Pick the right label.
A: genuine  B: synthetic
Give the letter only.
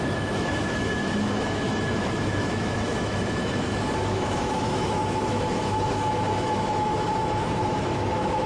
B